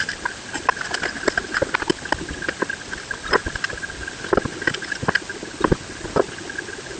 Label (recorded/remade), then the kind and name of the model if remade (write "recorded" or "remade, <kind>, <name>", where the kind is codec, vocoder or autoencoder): recorded